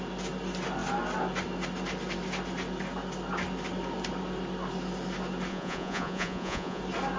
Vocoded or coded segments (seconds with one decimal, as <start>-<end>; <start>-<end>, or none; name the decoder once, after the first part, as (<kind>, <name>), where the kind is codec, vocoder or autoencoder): 5.5-6.8 (vocoder, Vocos)